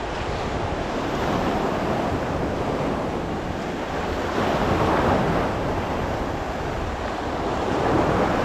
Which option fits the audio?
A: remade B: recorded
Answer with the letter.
B